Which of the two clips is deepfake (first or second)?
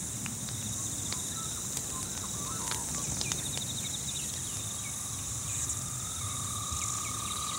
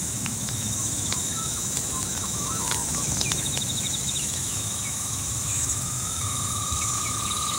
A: second